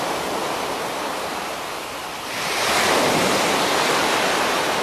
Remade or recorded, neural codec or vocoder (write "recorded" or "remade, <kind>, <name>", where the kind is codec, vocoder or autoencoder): recorded